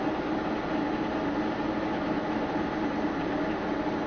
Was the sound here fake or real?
real